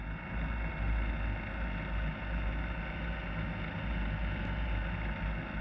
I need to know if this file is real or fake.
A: real